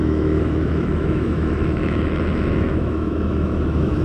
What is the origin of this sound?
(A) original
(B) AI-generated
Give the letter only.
B